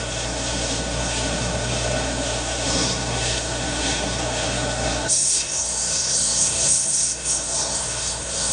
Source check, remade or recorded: remade